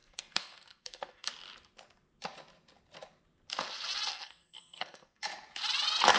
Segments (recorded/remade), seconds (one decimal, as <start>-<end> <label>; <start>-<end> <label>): 0.0-1.3 remade; 1.3-4.1 recorded; 4.1-5.2 remade; 5.2-6.2 recorded